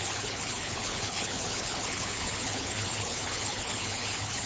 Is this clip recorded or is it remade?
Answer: remade